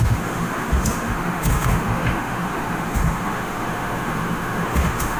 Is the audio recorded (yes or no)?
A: no